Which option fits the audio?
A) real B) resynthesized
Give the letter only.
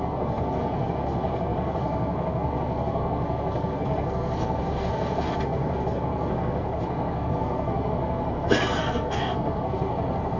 B